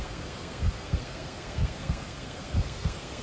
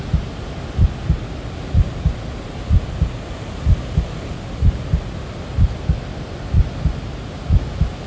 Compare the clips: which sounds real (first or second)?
second